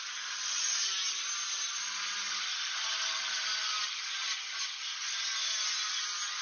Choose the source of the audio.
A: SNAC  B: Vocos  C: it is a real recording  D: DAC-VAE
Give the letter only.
C